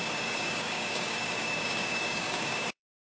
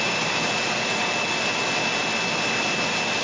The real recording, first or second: second